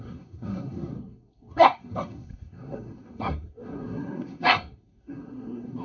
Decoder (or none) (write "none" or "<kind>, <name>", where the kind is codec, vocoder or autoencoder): codec, SNAC